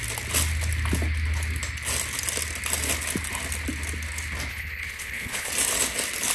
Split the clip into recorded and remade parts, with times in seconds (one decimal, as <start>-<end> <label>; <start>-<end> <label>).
0.0-4.5 recorded; 4.5-5.5 remade; 5.5-6.3 recorded